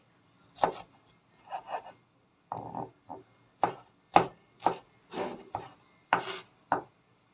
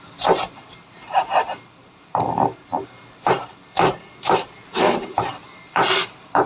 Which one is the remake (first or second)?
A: second